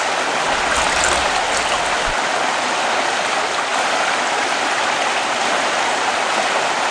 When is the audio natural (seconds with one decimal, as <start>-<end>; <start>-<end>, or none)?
0.0-3.7; 4.7-6.9

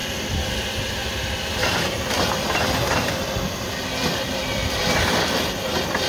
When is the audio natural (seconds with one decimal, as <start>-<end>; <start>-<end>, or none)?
0.0-0.8